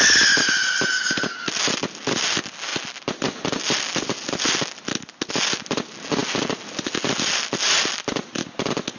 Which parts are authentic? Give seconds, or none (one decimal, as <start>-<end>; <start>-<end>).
0.0-9.0